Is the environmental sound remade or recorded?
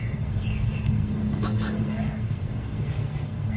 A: remade